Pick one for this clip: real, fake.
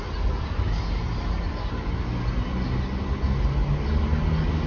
real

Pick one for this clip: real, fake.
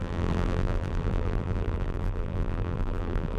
fake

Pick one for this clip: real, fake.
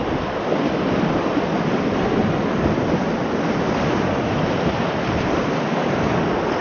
real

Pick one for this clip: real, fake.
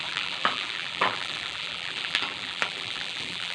fake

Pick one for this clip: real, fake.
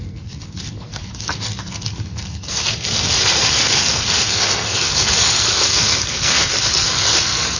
fake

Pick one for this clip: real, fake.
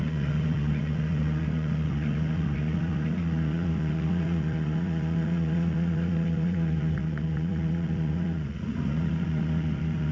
fake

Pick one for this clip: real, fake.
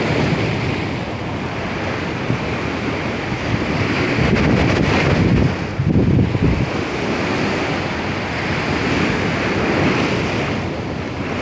real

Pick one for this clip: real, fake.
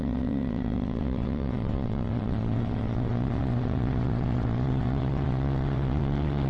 fake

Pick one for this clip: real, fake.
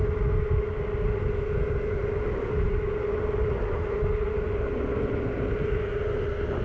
real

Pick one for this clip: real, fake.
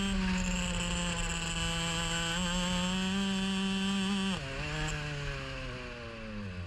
real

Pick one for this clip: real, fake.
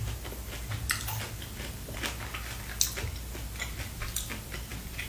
real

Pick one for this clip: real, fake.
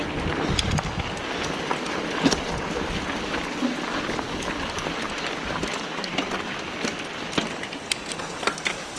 real